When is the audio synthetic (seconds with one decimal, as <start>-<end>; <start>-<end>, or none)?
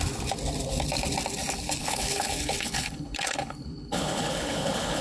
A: 1.8-5.0